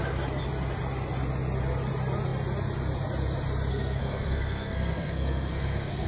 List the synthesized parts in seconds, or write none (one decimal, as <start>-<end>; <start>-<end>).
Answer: 3.7-6.1